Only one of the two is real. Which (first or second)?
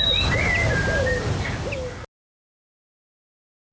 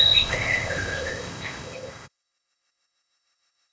first